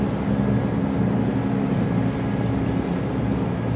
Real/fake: real